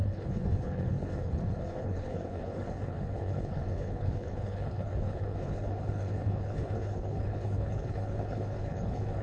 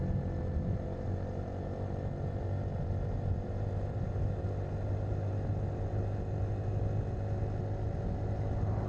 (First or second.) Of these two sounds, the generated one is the first